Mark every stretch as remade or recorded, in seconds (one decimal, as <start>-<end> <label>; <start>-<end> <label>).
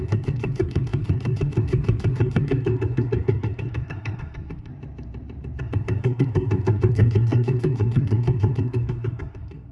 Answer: 0.0-4.7 remade; 4.7-5.6 recorded; 5.6-9.7 remade